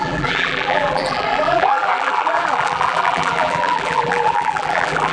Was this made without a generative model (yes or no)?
no